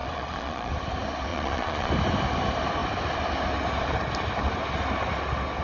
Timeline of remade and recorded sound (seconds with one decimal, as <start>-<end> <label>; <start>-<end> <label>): 0.0-0.7 remade; 0.7-1.3 recorded; 1.3-1.9 remade; 1.9-5.6 recorded